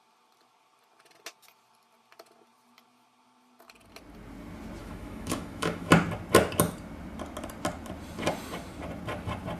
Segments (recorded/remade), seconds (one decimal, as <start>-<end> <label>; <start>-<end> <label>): 0.0-4.8 recorded; 4.8-5.9 remade; 5.9-9.6 recorded